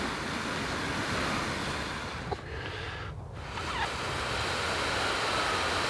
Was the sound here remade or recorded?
recorded